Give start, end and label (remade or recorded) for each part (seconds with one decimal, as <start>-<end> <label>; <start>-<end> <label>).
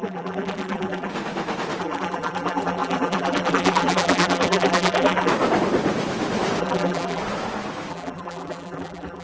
0.0-1.1 remade; 1.1-1.8 recorded; 1.8-5.3 remade; 5.3-6.6 recorded; 6.6-7.2 remade; 7.2-7.9 recorded; 7.9-9.2 remade